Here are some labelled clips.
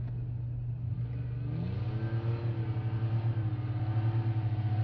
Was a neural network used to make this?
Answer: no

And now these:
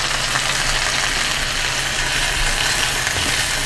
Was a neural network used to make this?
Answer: no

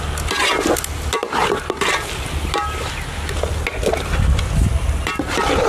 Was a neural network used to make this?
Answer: no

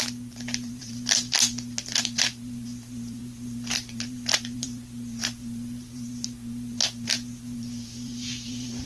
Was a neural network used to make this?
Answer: yes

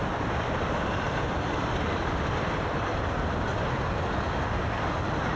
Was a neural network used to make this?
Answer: no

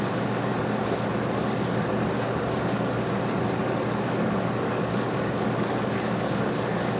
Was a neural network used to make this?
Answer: yes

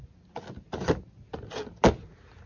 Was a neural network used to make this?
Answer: no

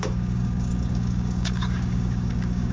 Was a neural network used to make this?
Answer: yes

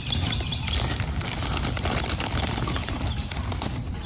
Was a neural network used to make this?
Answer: no